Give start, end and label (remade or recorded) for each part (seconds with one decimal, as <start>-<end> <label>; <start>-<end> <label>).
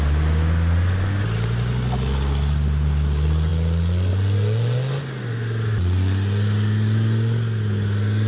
0.0-8.3 recorded